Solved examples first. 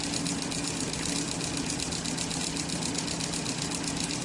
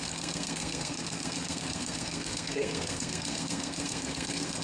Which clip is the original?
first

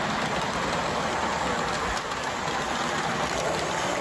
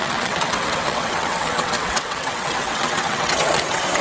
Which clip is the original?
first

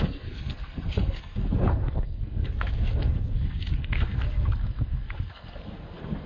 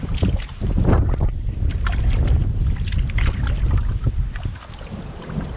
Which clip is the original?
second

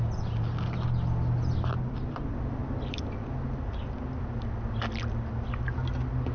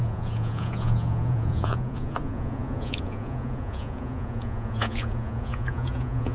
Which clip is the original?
first